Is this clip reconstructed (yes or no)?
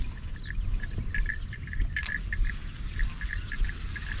no